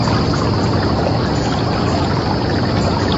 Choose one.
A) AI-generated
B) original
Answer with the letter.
B